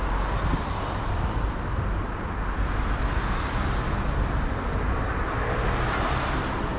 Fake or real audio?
real